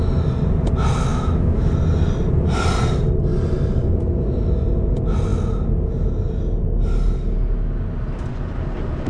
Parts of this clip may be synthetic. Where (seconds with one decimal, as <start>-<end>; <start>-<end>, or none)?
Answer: 1.1-1.7